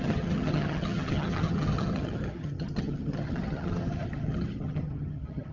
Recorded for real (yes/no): no